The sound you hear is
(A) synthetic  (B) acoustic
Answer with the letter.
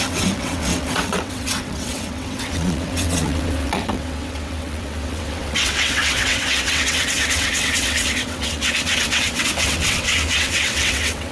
A